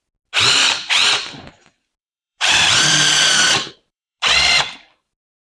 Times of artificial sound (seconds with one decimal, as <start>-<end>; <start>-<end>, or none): 2.0-4.2